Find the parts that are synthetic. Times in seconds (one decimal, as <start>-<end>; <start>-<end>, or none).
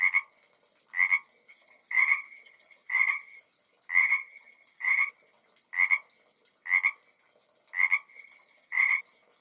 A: 1.5-3.4; 4.0-5.1; 8.1-9.0